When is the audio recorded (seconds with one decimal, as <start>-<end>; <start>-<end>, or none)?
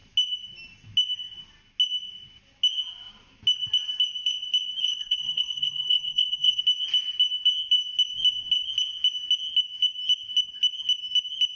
0.0-4.8; 6.6-11.6